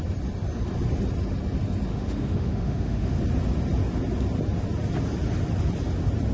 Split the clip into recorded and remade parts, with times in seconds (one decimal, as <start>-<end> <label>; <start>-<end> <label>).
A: 0.0-1.9 recorded; 1.9-3.2 remade; 3.2-6.3 recorded